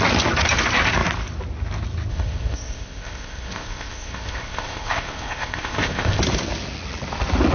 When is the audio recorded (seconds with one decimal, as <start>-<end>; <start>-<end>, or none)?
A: 0.0-2.1; 6.2-7.5